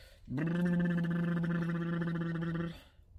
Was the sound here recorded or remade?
recorded